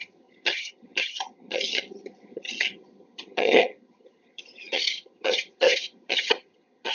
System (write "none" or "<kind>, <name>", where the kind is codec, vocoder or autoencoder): vocoder, HiFi-GAN